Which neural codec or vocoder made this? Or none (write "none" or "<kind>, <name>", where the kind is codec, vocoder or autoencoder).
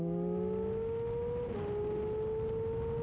none